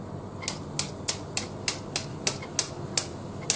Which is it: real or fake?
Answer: real